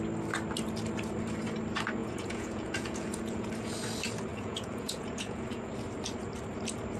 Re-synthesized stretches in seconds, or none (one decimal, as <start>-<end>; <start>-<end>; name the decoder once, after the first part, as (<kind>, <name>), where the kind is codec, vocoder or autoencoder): 2.0-3.5 (vocoder, Vocos); 4.3-5.7